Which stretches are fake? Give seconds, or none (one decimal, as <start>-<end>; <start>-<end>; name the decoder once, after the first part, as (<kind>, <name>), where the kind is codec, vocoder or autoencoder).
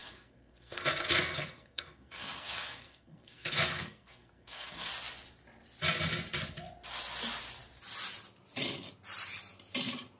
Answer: 0.0-4.9 (codec, SNAC)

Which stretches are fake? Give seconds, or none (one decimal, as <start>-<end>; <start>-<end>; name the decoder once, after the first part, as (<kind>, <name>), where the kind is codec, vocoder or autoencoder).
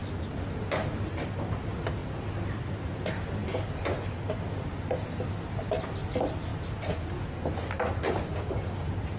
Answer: none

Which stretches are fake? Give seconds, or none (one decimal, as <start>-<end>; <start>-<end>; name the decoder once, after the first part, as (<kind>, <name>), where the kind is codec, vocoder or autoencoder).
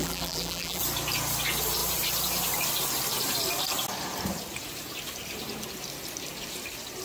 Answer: 0.0-0.8 (vocoder, BigVGAN v2)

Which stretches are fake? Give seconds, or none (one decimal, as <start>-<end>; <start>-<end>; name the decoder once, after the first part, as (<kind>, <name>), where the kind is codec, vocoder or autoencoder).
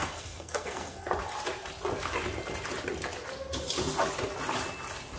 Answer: 0.0-1.1 (codec, SNAC)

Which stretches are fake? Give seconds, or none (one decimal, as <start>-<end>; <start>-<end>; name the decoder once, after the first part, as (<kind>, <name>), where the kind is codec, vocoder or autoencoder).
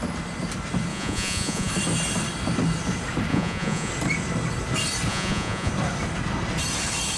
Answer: 0.9-1.7 (vocoder, Vocos); 3.3-3.9; 5.1-5.7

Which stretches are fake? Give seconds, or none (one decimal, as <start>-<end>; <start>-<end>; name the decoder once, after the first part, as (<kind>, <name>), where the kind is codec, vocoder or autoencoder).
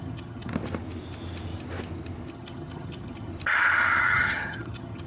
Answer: 0.0-0.5 (vocoder, HiFi-GAN); 2.3-3.3; 4.0-5.1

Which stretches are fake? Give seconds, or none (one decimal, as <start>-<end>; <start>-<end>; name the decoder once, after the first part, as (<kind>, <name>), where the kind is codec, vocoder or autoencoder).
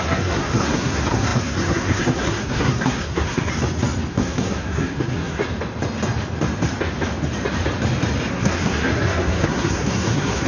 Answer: 0.0-3.5 (codec, SNAC); 4.1-5.4; 8.3-10.5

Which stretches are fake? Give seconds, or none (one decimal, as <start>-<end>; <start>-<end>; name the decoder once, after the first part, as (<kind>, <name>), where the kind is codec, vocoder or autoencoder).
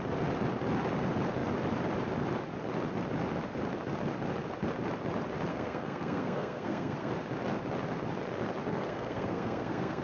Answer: 5.5-7.1 (codec, SNAC); 8.7-10.0